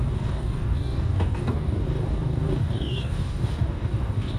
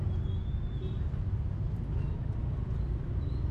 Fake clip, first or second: first